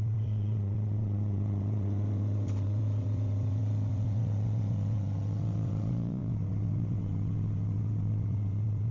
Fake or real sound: fake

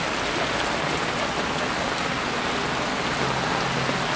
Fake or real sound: real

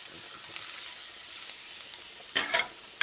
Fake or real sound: real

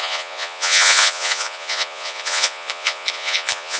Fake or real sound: fake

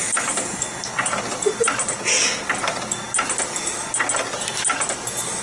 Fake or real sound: real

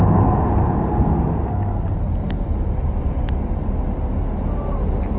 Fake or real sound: real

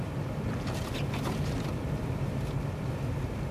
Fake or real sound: real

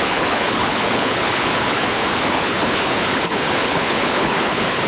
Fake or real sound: fake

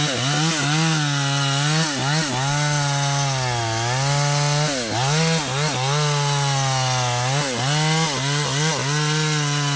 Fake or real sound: real